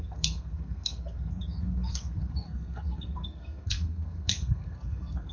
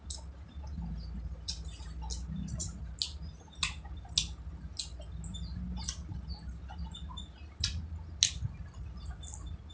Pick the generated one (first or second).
first